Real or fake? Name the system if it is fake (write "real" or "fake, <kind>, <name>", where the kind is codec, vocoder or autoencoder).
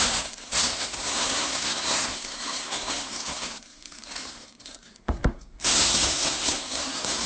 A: fake, codec, SNAC